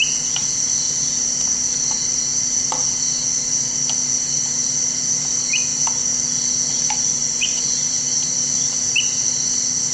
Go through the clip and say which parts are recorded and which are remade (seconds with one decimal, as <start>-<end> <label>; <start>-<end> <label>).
0.0-7.2 recorded; 7.2-8.1 remade; 8.1-9.9 recorded